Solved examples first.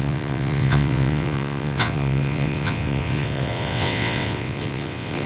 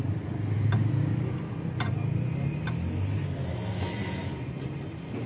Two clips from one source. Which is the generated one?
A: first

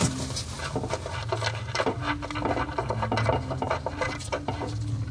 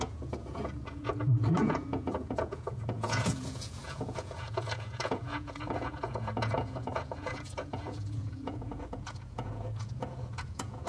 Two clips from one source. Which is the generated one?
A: second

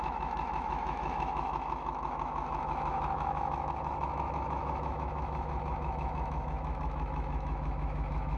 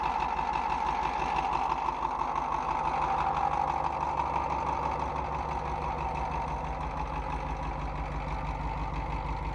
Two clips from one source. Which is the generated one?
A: first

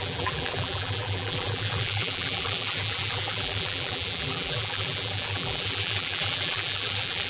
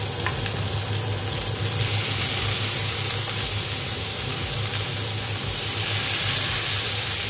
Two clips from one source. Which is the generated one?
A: first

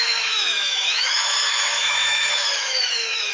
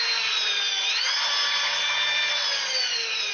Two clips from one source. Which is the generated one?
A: first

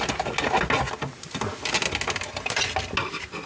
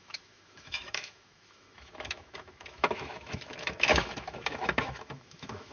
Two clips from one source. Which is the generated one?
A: second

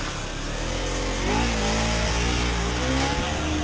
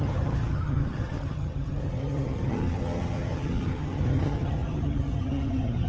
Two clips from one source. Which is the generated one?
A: second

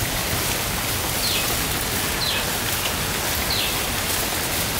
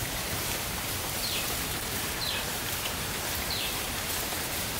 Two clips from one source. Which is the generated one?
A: second